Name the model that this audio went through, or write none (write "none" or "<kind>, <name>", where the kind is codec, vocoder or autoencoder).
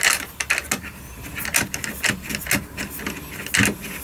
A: none